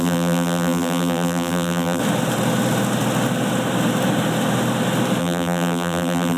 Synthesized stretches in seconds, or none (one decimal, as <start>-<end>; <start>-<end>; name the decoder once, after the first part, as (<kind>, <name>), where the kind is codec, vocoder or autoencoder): 0.0-2.0 (vocoder, BigVGAN v2); 5.2-6.4